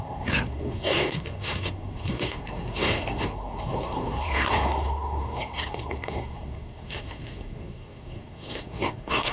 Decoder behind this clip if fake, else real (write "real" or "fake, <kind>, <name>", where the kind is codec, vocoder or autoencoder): fake, codec, SNAC